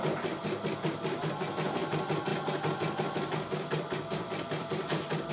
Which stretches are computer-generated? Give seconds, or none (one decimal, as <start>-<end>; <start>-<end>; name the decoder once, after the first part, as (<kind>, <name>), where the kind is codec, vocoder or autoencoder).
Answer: none